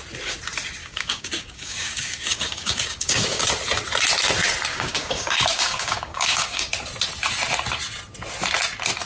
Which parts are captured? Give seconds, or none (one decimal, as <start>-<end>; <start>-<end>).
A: 0.0-0.8; 3.5-4.7; 6.7-9.1